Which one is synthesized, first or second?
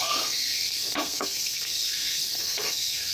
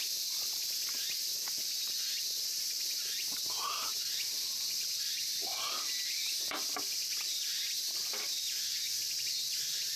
first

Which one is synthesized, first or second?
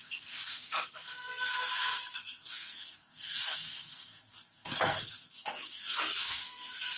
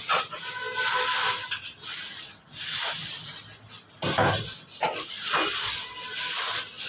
first